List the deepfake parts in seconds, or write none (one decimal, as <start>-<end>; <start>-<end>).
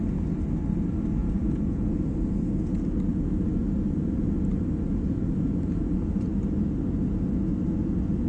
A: 1.2-1.9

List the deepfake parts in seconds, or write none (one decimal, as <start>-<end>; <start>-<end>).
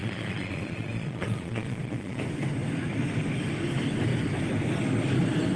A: 0.0-2.2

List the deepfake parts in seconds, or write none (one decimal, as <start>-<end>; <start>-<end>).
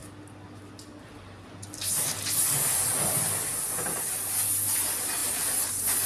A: none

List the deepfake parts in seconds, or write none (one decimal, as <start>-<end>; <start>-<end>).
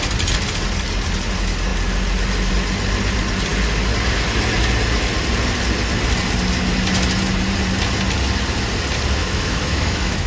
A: 9.2-10.3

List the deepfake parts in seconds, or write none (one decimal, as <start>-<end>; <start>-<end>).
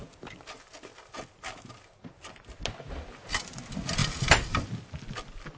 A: none